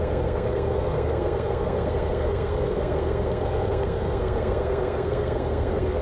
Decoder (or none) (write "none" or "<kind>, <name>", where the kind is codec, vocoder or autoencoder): codec, SNAC